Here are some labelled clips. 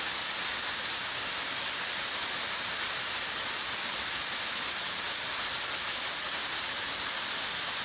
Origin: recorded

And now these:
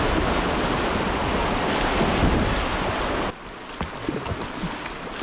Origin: recorded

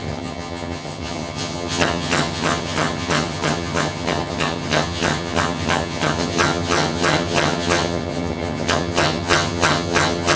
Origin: remade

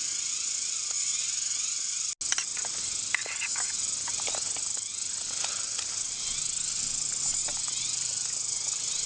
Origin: recorded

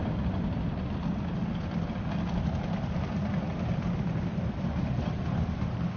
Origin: recorded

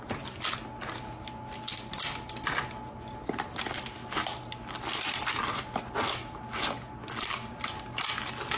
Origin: recorded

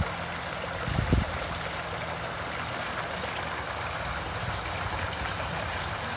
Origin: recorded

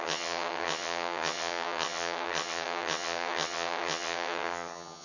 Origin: remade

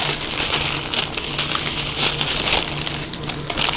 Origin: recorded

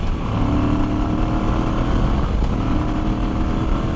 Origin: recorded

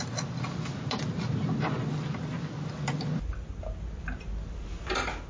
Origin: recorded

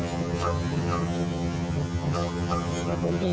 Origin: remade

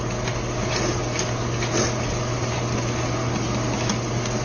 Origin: recorded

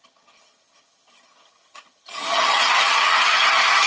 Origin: remade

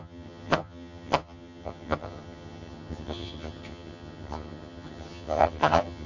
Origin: remade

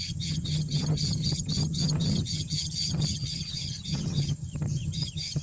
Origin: remade